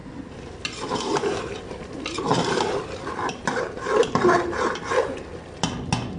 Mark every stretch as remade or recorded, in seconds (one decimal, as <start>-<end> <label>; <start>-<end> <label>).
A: 0.0-3.6 remade; 3.6-4.0 recorded; 4.0-4.8 remade; 4.8-6.2 recorded